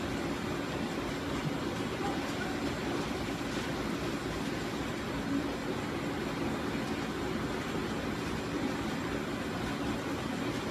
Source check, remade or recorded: recorded